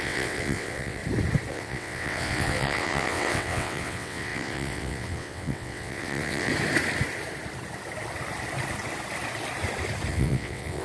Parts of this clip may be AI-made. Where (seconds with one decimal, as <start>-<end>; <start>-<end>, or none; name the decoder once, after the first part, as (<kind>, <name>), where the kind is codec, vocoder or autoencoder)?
0.0-1.0 (vocoder, WaveNeXt); 1.5-6.5; 10.1-10.8